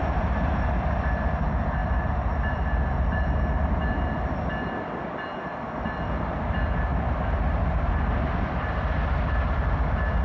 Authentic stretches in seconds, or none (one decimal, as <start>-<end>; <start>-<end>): 0.0-10.2